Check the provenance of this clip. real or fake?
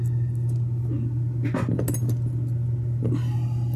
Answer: real